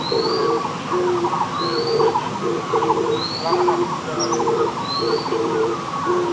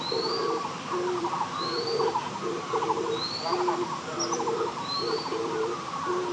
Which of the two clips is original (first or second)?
first